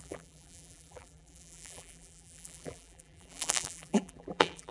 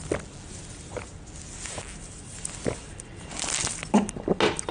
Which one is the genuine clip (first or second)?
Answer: second